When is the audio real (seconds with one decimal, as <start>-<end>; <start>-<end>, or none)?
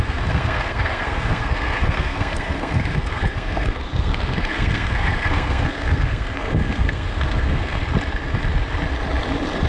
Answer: 7.8-9.7